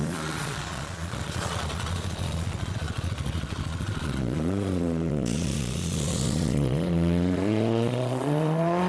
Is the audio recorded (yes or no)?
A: no